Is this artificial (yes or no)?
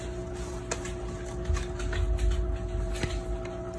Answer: no